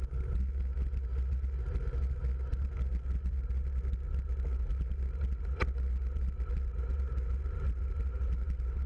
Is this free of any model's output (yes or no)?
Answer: yes